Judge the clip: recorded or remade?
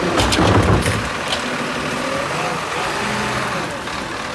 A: recorded